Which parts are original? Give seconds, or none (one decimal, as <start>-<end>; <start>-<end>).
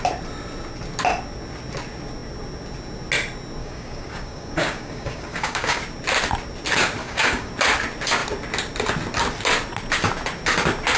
0.0-3.6; 5.8-7.0; 7.5-11.0